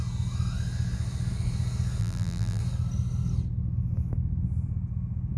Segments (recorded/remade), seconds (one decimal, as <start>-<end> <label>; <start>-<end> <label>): 0.0-2.0 recorded; 2.0-2.6 remade; 2.6-5.4 recorded